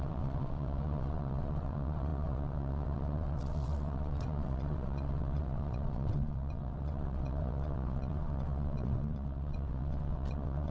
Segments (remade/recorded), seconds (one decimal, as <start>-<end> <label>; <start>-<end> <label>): 0.0-10.7 remade